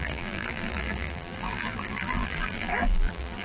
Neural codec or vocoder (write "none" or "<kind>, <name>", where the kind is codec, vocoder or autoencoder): vocoder, BigVGAN v2